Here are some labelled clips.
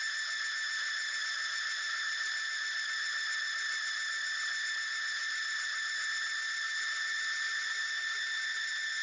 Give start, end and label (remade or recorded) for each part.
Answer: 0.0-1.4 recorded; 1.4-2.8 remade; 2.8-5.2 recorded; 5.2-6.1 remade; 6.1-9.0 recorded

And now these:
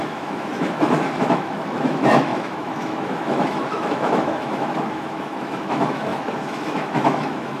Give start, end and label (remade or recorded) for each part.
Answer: 0.0-7.6 remade

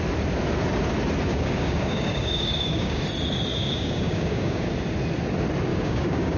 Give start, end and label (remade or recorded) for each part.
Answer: 0.0-1.3 recorded; 1.3-3.0 remade; 3.0-3.5 recorded; 3.5-4.7 remade; 4.7-5.7 recorded; 5.7-6.4 remade

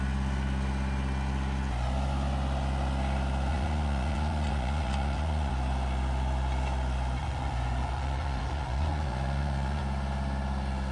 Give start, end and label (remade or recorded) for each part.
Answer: 0.0-3.5 recorded; 3.5-5.5 remade; 5.5-7.2 recorded; 7.2-9.8 remade; 9.8-10.9 recorded

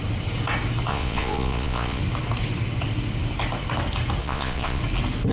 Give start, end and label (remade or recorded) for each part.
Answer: 0.0-0.9 recorded; 0.9-2.0 remade; 2.0-4.2 recorded; 4.2-4.8 remade; 4.8-5.3 recorded